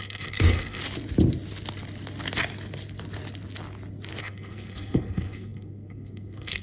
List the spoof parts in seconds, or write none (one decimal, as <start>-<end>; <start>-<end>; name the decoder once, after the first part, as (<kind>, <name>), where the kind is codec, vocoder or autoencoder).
0.0-0.8 (codec, SNAC); 4.2-6.6